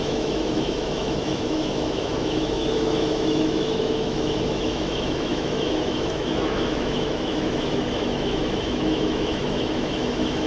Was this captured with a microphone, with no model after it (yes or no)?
no